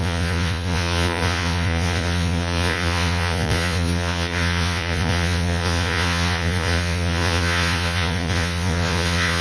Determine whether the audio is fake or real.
fake